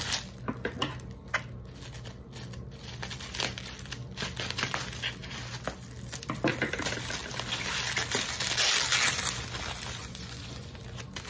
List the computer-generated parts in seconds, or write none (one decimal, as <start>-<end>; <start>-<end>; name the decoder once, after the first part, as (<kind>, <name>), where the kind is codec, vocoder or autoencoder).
10.0-10.8 (vocoder, Vocos)